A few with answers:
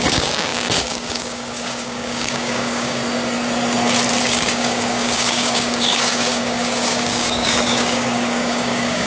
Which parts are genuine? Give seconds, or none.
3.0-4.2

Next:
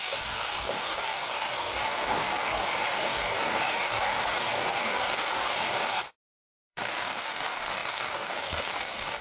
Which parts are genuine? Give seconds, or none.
6.0-6.6

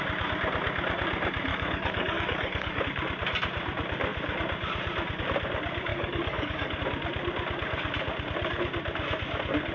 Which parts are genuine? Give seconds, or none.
0.0-1.5; 2.8-5.9; 6.8-9.7

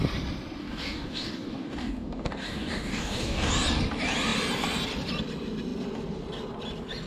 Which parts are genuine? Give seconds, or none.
0.0-0.6; 3.5-7.1

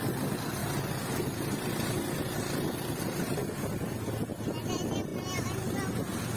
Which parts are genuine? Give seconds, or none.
0.0-6.4

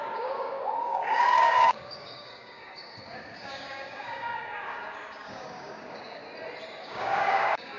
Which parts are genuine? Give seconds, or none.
6.2-6.8

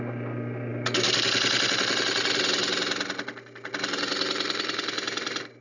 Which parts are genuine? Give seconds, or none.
0.0-5.6